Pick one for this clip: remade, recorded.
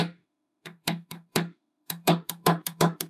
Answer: remade